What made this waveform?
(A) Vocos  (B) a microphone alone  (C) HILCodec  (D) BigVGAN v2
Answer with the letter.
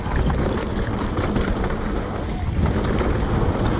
B